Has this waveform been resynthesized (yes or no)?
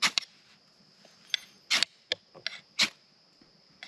no